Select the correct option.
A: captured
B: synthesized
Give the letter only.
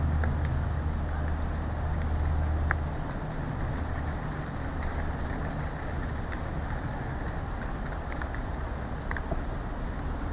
A